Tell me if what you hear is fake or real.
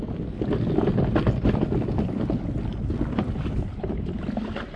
real